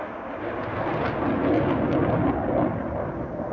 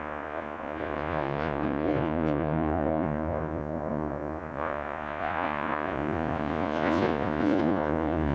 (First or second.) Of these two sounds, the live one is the first